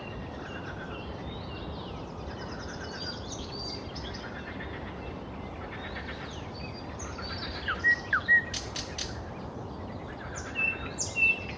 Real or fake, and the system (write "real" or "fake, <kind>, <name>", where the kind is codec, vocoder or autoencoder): real